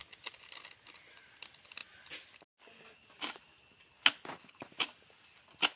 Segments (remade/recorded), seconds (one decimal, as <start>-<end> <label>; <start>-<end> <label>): 0.0-5.8 recorded

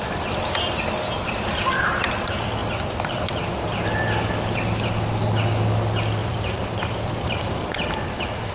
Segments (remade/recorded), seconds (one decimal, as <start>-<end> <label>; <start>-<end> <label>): 0.0-6.2 recorded; 6.2-8.5 remade

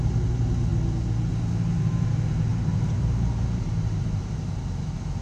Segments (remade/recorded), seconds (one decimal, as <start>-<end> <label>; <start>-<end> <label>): 0.0-2.5 recorded; 2.5-4.4 remade; 4.4-5.2 recorded

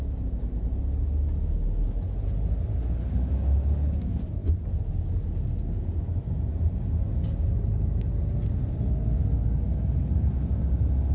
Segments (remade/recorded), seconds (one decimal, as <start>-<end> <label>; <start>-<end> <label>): 0.0-11.1 recorded